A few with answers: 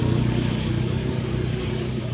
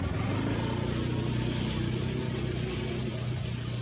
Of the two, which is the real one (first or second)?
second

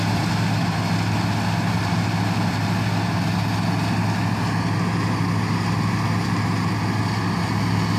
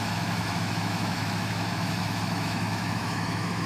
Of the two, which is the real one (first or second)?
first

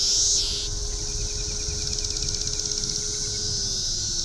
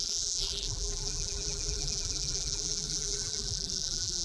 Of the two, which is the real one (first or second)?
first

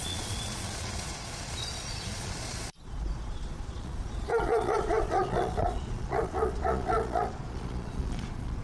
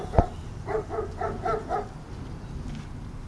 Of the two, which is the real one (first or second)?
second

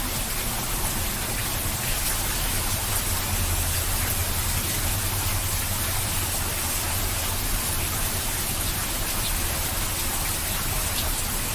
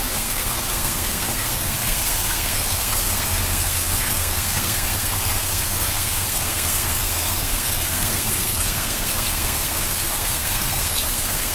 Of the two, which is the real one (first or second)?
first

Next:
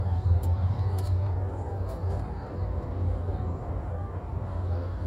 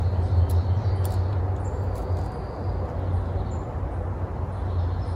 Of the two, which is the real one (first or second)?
second